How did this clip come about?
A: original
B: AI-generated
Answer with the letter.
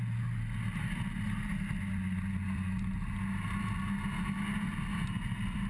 A